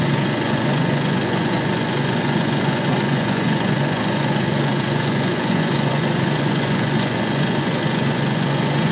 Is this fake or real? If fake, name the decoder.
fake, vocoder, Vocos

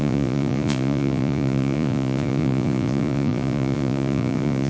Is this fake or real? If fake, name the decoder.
fake, vocoder, Vocos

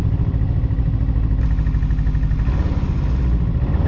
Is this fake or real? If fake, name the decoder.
real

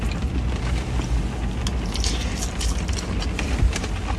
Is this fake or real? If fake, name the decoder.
real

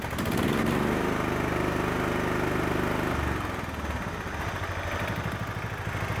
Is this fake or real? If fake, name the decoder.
real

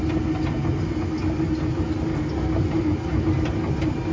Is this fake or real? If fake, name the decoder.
real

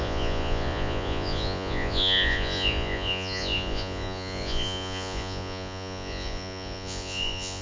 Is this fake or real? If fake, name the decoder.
fake, vocoder, Vocos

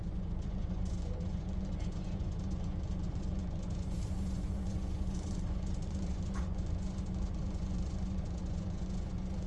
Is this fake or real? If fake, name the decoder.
fake, vocoder, Vocos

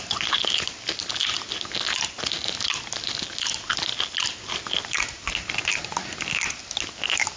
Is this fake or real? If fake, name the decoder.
real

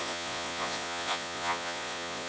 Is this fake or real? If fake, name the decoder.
fake, vocoder, Vocos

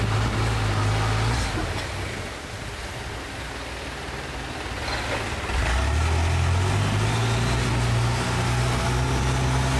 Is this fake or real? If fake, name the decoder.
real